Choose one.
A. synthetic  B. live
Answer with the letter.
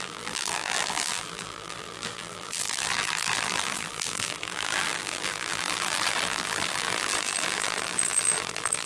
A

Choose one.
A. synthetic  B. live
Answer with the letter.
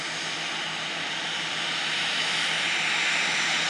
B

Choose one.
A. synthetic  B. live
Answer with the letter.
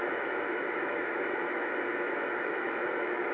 A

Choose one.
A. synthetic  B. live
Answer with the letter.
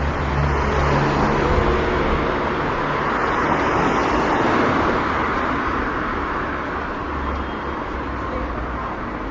B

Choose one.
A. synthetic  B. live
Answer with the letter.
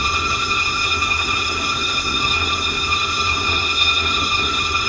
A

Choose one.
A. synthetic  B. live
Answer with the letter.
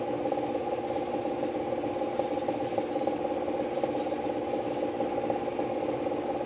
B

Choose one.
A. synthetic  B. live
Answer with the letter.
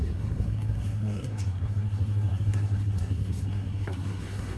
A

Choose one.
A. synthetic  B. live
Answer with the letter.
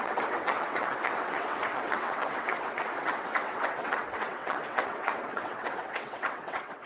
A